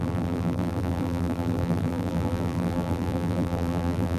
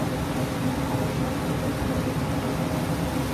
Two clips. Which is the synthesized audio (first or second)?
first